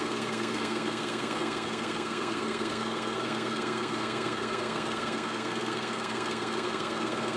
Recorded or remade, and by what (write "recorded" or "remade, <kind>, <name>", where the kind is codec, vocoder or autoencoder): remade, codec, SNAC